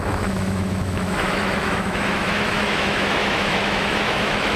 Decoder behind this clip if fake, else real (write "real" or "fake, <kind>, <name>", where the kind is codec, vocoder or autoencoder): fake, autoencoder, DAC-VAE